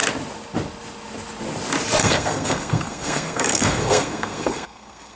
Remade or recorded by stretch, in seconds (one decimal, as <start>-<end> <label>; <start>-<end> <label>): 0.0-2.0 recorded; 2.0-5.2 remade

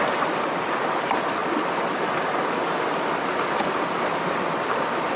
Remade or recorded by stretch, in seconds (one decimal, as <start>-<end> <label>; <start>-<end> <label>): 0.0-5.2 recorded

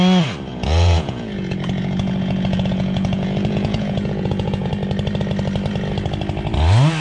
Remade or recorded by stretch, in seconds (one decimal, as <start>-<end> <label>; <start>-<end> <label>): 0.0-0.5 recorded; 0.5-4.7 remade; 4.7-7.0 recorded

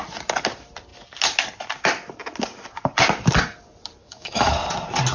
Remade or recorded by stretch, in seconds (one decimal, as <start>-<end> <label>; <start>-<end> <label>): 0.0-4.0 recorded; 4.0-4.5 remade; 4.5-5.1 recorded

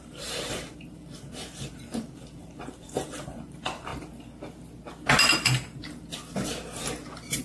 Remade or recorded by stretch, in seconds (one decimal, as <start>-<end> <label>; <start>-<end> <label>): 0.0-3.9 remade; 3.9-7.4 recorded

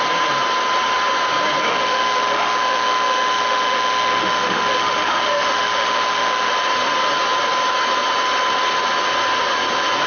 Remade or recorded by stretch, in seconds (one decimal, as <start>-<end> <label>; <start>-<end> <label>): 0.0-1.7 recorded; 1.7-6.5 remade; 6.5-10.1 recorded

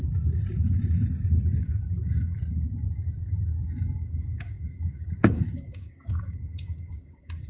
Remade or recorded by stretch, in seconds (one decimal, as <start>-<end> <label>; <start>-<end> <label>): 0.0-1.6 recorded; 1.6-2.4 remade; 2.4-3.2 recorded; 3.2-7.5 remade

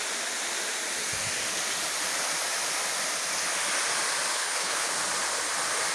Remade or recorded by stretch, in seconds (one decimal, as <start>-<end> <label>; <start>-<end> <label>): 0.0-4.3 recorded; 4.3-4.9 remade; 4.9-5.9 recorded